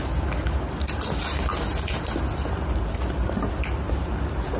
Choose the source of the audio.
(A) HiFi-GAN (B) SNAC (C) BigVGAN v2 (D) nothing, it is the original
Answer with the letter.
D